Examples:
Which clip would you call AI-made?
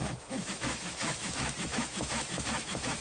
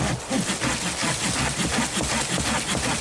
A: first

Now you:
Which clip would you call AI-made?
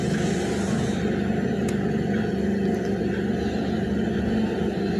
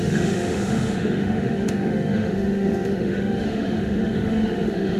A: second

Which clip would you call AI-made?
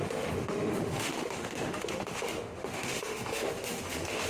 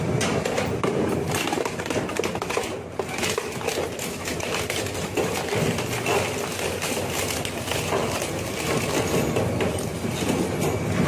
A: first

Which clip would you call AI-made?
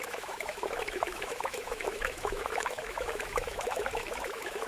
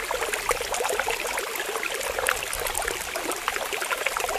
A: first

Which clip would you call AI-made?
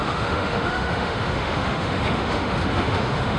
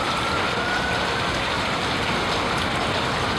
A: first